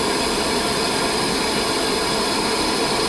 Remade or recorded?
remade